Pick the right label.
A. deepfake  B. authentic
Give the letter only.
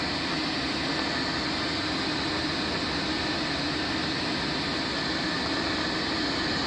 B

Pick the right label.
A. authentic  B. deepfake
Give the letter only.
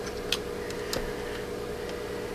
A